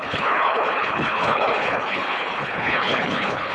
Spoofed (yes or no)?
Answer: yes